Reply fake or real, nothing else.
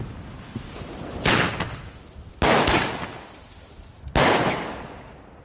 real